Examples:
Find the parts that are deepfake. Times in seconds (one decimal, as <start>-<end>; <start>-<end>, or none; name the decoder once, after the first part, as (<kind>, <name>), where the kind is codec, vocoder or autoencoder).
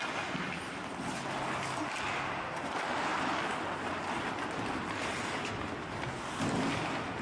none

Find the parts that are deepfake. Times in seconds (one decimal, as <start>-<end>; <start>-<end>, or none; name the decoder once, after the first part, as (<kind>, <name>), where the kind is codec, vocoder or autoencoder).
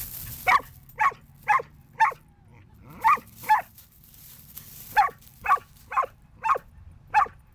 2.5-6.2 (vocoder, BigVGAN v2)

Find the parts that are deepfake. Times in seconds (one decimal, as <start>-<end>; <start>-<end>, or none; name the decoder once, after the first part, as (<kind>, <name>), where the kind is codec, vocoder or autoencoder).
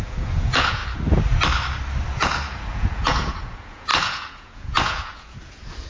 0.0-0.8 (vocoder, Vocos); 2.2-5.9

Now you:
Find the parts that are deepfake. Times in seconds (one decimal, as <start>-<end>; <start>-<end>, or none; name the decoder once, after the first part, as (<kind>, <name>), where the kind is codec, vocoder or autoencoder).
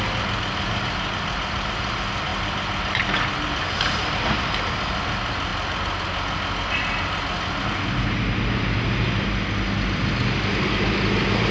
none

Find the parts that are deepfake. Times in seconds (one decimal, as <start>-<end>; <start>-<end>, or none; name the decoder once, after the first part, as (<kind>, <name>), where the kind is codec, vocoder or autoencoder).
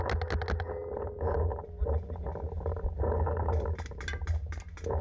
none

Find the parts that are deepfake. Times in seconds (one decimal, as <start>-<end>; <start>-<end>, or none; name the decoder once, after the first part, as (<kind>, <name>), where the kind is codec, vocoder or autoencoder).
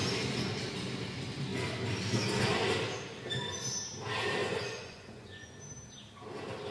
4.4-5.5 (vocoder, Vocos)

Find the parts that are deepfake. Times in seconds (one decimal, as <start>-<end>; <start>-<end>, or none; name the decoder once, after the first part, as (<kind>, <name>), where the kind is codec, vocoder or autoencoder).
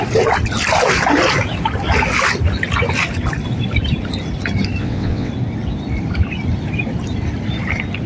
4.8-5.3 (vocoder, WaveNeXt)